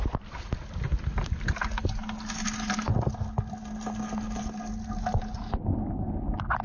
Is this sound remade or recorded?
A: recorded